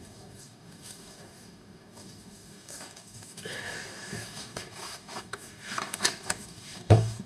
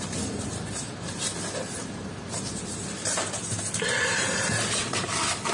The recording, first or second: second